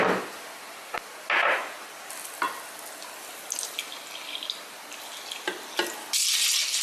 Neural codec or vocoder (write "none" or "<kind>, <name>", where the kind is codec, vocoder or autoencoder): none